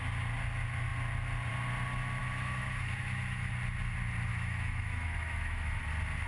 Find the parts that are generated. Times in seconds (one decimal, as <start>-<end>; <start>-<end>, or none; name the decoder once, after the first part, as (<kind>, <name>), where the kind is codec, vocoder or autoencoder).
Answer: 2.2-3.5 (autoencoder, DAC-VAE); 4.3-5.8

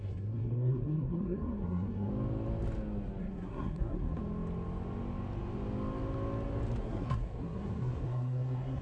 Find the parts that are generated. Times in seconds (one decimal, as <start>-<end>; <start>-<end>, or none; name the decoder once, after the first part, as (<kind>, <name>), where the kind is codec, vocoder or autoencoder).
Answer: 0.0-2.1 (codec, SNAC); 3.2-4.2; 6.8-8.8

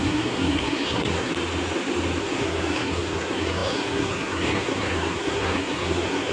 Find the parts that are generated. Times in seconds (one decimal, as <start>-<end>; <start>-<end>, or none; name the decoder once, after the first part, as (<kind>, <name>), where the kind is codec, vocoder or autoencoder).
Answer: 0.0-1.3 (codec, SNAC); 2.2-6.3

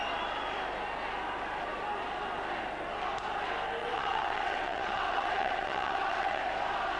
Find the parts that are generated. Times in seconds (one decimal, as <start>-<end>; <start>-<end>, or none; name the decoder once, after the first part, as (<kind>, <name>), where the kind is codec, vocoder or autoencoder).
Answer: 3.8-6.4 (vocoder, WaveNeXt)

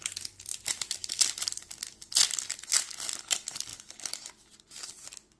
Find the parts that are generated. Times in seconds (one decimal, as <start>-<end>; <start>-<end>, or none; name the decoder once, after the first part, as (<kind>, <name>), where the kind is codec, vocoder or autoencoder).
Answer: none

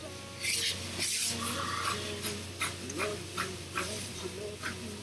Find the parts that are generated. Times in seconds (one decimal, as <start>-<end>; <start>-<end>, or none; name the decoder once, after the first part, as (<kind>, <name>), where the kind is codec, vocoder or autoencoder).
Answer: 3.1-4.5 (vocoder, BigVGAN v2)

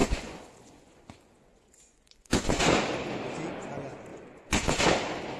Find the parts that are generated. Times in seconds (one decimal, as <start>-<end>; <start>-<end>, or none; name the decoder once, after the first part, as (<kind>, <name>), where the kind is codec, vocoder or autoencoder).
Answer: 0.0-2.6 (vocoder, Vocos); 4.1-4.8